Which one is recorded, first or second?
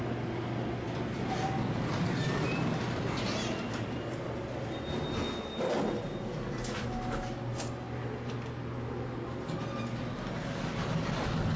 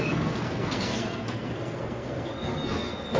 first